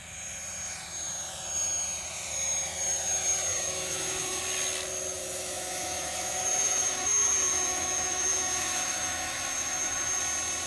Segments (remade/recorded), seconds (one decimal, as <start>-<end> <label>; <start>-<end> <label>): 0.0-3.5 recorded; 3.5-4.4 remade; 4.4-5.1 recorded; 5.1-10.2 remade; 10.2-10.7 recorded